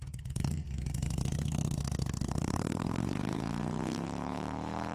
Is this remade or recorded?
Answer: remade